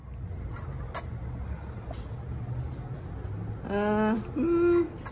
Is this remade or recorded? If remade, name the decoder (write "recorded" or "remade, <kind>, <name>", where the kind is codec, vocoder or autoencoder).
recorded